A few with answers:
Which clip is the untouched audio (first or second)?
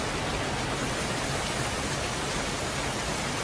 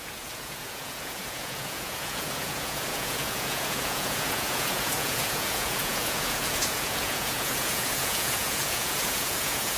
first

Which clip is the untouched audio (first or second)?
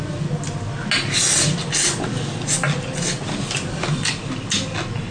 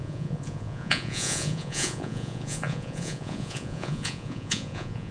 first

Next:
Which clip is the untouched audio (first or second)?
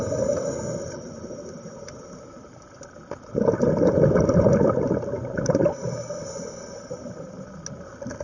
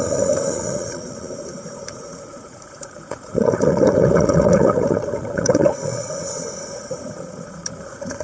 first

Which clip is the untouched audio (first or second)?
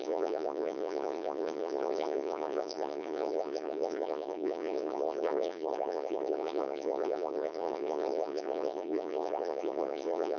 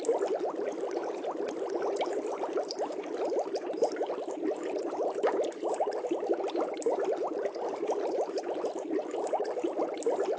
second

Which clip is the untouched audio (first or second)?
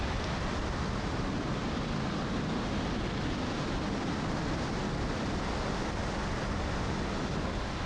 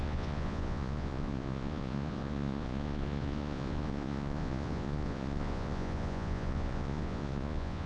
first